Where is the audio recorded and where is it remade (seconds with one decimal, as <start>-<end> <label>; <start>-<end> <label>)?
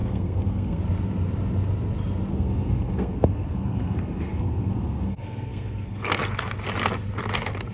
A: 0.0-0.8 remade; 0.8-2.3 recorded; 2.3-6.2 remade; 6.2-7.7 recorded